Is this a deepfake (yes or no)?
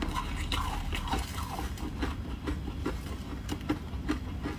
no